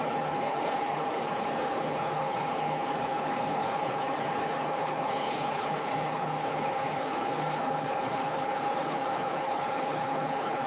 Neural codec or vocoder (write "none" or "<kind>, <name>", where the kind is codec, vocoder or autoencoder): codec, HILCodec